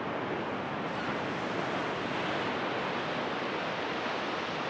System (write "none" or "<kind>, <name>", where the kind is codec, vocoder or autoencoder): none